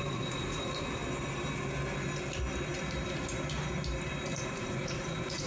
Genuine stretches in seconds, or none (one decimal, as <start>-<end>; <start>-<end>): 1.0-4.3